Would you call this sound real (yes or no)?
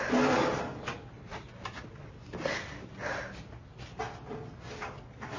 yes